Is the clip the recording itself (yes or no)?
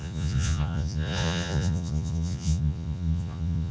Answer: no